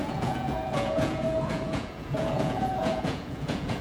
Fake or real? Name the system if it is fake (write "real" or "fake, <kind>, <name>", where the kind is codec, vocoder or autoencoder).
fake, vocoder, Vocos